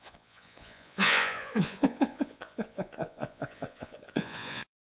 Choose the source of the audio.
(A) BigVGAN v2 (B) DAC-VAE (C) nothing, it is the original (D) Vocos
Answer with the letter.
D